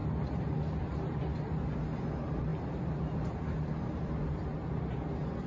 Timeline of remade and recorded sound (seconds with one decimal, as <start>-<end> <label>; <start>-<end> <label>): 0.0-2.5 recorded; 2.5-4.8 remade; 4.8-5.5 recorded